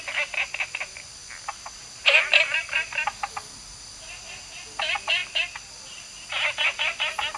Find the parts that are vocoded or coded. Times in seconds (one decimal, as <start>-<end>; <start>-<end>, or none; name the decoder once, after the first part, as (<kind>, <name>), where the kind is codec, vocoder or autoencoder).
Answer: none